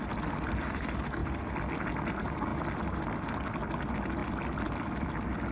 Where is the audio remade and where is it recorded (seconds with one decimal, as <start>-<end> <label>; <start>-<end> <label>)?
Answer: 0.0-1.2 recorded; 1.2-1.9 remade; 1.9-2.5 recorded; 2.5-3.3 remade; 3.3-4.2 recorded; 4.2-5.1 remade; 5.1-5.5 recorded